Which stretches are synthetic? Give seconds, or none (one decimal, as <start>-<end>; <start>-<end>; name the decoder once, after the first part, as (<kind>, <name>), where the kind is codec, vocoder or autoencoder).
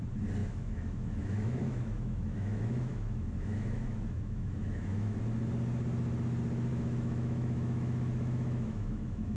0.4-5.2 (autoencoder, DAC-VAE); 6.7-9.4